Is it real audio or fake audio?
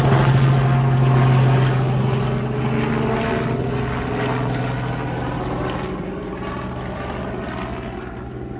real